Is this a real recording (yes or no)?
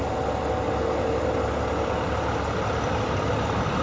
yes